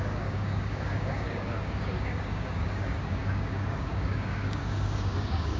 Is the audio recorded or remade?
remade